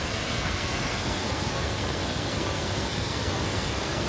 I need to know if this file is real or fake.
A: fake